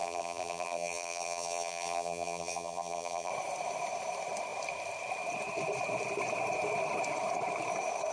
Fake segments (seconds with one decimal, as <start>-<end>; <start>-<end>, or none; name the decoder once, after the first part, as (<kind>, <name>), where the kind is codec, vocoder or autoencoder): 0.0-3.3 (vocoder, BigVGAN v2)